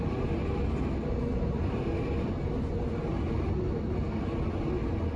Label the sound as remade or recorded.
recorded